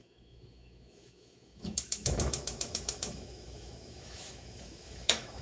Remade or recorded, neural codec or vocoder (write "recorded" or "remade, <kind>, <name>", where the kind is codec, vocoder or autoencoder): remade, autoencoder, DAC-VAE